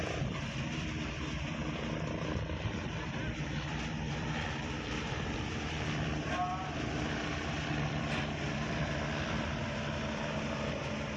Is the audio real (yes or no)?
no